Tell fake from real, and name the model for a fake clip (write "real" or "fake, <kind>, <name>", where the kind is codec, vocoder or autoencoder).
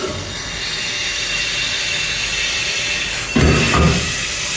real